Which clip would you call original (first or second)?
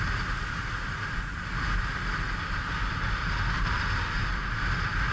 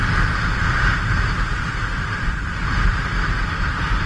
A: first